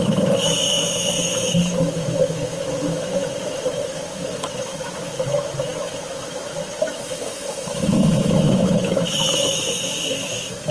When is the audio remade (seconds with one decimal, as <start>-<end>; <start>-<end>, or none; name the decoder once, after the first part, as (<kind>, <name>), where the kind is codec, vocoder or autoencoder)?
0.0-10.7 (autoencoder, DAC-VAE)